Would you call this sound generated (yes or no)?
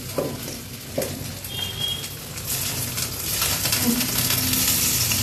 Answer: no